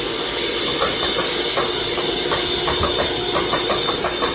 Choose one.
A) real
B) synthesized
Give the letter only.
A